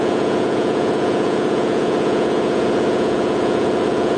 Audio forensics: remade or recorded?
remade